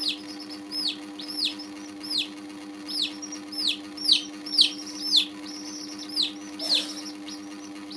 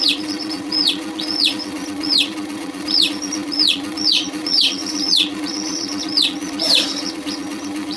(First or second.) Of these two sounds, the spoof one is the second